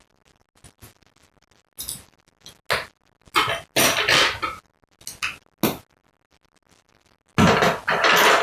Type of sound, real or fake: real